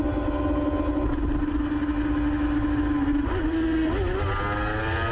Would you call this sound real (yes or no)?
yes